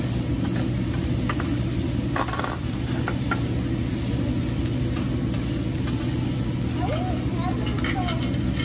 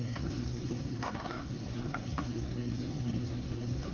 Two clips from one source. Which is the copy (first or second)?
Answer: second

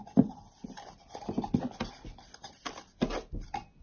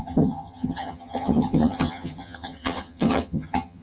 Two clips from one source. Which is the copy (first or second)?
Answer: second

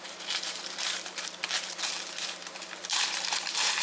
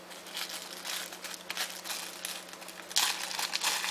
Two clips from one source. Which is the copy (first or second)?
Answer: first